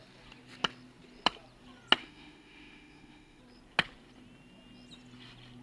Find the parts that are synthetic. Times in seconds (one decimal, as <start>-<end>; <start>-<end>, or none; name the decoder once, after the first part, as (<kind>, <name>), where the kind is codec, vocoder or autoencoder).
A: 2.0-3.4 (autoencoder, DAC-VAE)